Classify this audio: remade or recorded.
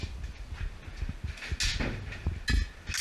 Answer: recorded